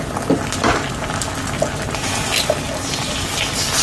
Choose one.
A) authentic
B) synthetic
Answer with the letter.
A